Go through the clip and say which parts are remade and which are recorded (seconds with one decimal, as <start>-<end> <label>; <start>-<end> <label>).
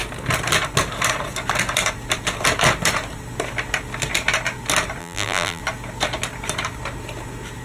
0.0-5.0 recorded; 5.0-5.6 remade; 5.6-7.6 recorded